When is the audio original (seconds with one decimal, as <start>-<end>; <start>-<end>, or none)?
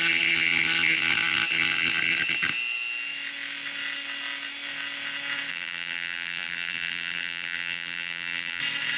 0.0-5.5; 8.6-9.0